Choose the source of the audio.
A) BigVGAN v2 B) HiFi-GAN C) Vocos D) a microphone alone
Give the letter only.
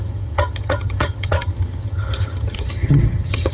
B